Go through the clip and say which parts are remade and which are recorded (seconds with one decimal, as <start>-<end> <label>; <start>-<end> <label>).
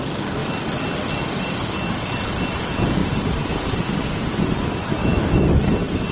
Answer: 0.0-5.0 recorded; 5.0-5.6 remade; 5.6-6.1 recorded